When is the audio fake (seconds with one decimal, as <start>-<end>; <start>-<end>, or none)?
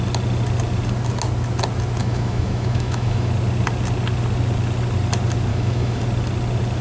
2.0-3.3; 5.5-6.0